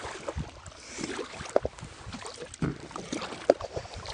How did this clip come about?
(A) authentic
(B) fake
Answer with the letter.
A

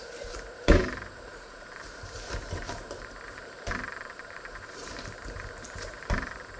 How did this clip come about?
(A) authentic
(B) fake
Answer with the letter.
B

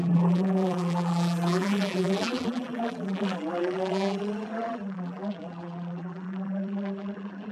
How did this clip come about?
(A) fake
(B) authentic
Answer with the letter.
A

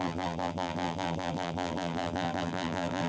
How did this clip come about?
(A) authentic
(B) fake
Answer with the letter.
B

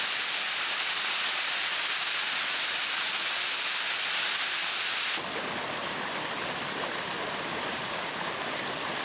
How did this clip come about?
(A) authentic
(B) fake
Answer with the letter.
B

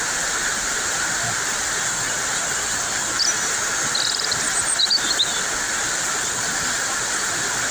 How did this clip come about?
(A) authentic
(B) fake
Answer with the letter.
B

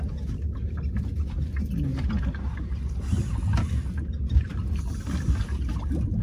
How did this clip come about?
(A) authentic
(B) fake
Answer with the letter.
A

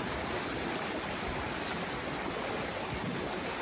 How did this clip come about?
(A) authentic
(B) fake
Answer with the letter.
A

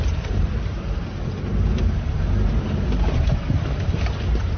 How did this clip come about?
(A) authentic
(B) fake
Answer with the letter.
B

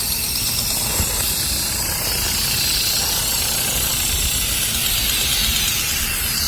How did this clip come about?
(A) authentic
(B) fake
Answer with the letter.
A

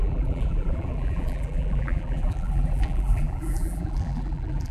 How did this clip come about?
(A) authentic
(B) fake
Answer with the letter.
B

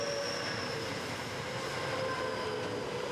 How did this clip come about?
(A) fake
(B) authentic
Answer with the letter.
B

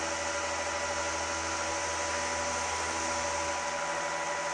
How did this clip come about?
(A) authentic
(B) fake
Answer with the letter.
A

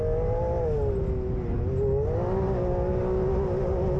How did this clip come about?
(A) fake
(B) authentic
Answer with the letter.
B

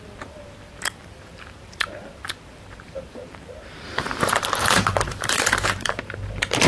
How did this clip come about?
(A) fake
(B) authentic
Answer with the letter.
A